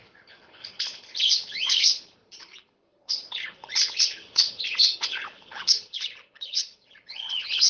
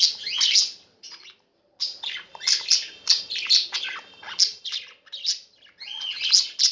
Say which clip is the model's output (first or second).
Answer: first